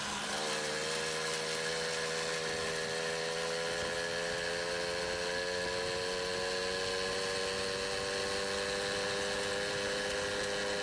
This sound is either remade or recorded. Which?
recorded